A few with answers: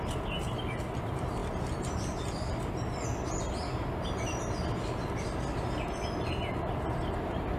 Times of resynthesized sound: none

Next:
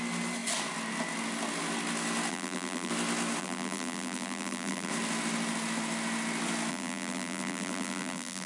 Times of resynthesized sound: 2.3-2.9 (vocoder, BigVGAN v2); 3.4-4.9; 6.7-8.5

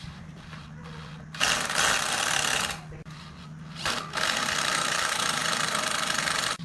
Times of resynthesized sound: 0.0-0.6 (vocoder, BigVGAN v2); 4.6-5.4

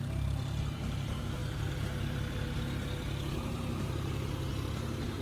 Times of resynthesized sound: 0.0-5.2 (vocoder, BigVGAN v2)

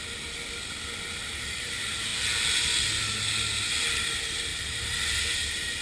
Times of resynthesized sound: 1.2-1.7 (vocoder, BigVGAN v2); 4.5-5.8

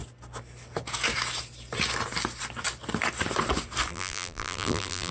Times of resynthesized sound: 3.9-5.1 (vocoder, BigVGAN v2)

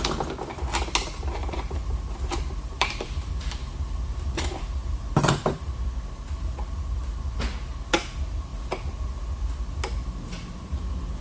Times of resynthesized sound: 1.4-5.3 (vocoder, BigVGAN v2)